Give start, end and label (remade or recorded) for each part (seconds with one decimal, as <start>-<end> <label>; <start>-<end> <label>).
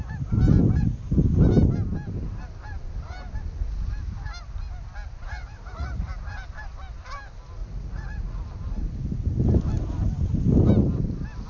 0.0-5.2 recorded; 5.2-6.0 remade; 6.0-7.6 recorded; 7.6-8.4 remade; 8.4-11.5 recorded